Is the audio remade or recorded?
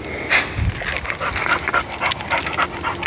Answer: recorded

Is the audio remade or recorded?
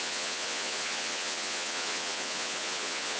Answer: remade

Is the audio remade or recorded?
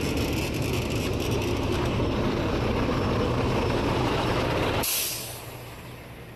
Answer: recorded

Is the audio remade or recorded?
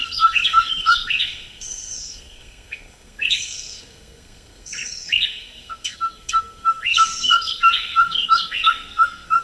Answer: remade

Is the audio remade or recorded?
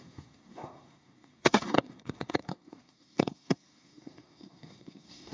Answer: remade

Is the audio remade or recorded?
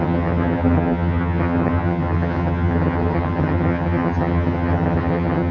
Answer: remade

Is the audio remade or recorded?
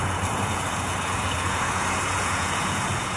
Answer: remade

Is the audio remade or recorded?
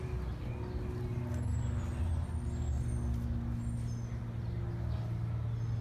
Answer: recorded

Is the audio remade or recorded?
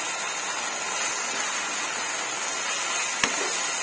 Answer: recorded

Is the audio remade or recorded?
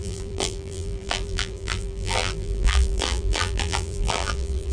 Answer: remade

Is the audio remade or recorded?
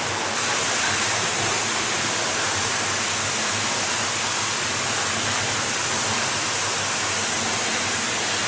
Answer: recorded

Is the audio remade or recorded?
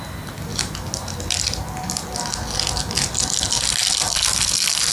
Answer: recorded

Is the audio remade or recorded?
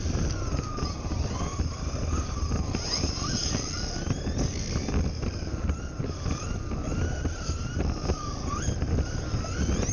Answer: recorded